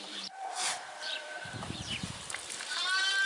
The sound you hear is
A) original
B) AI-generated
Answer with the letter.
B